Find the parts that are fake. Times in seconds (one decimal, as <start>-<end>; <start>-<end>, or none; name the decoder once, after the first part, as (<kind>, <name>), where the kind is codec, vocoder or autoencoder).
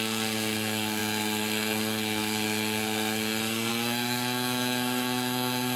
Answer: 0.0-5.8 (codec, SNAC)